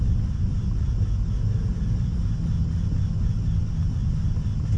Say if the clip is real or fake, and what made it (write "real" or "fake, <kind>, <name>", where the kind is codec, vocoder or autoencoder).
real